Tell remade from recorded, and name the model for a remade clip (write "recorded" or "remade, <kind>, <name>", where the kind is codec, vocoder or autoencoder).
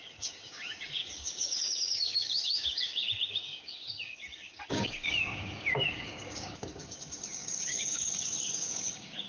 remade, codec, DAC